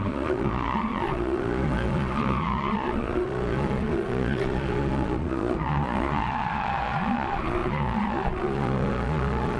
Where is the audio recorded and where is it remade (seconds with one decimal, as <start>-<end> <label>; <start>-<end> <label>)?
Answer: 0.0-9.6 remade